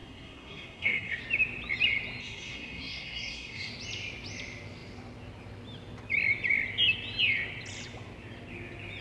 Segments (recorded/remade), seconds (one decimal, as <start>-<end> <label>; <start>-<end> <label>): 0.0-1.2 remade; 1.2-2.2 recorded; 2.2-3.7 remade; 3.7-9.0 recorded

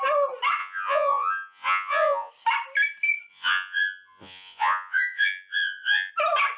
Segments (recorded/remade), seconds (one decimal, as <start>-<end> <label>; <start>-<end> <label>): 0.0-0.6 recorded; 0.6-2.3 remade; 2.3-3.3 recorded; 3.3-6.1 remade; 6.1-6.6 recorded

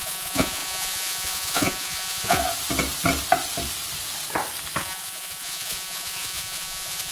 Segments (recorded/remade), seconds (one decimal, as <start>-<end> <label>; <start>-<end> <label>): 0.0-2.4 remade; 2.4-4.8 recorded; 4.8-7.1 remade